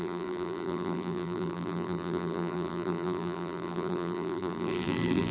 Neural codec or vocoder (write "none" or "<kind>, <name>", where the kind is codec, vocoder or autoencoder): vocoder, BigVGAN v2